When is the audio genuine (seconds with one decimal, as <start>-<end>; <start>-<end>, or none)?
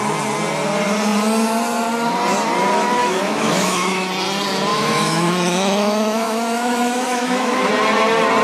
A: 0.0-3.0; 4.1-4.7; 7.7-8.4